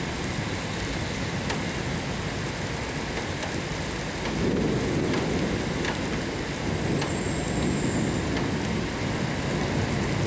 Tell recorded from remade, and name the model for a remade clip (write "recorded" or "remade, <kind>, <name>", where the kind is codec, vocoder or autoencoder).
recorded